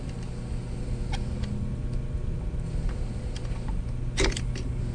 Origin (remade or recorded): recorded